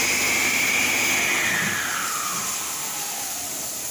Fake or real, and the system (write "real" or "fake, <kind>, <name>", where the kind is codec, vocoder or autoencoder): real